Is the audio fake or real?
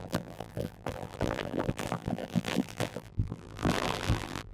fake